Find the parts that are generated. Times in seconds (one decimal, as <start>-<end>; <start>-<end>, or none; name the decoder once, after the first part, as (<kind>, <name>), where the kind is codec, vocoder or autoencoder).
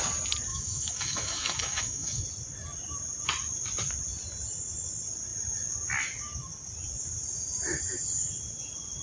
0.5-2.2 (autoencoder, DAC-VAE)